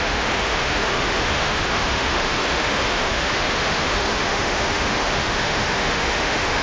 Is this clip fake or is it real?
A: fake